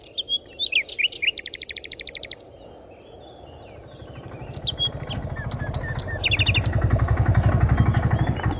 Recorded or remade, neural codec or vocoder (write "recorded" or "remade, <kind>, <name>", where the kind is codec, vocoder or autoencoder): recorded